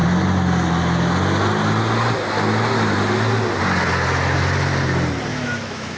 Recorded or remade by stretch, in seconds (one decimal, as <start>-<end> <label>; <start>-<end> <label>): 0.0-5.3 recorded; 5.3-6.0 remade